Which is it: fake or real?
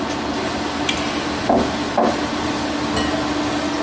real